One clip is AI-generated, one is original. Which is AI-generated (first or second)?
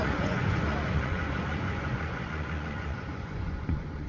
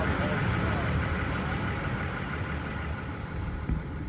first